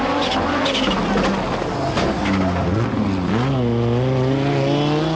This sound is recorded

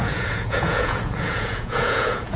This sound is remade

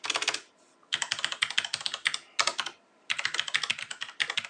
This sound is recorded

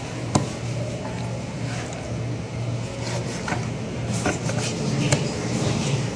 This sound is recorded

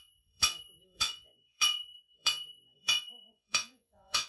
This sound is remade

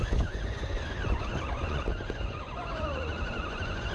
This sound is remade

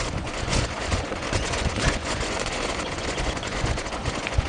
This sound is remade